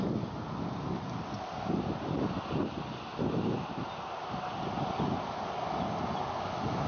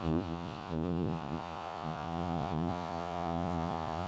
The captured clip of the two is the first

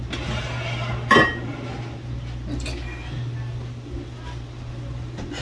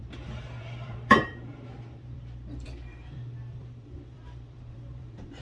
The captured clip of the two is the first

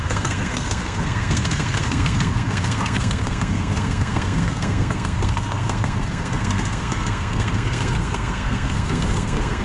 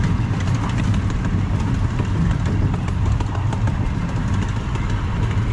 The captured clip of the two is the second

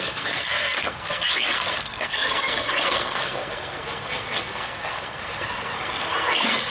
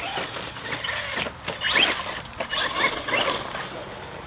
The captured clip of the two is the second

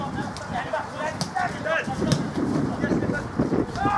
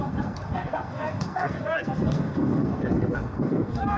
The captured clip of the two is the first